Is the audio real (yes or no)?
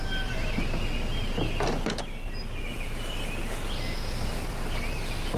yes